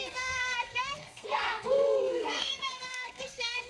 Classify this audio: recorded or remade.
remade